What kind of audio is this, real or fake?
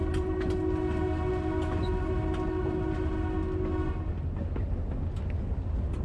real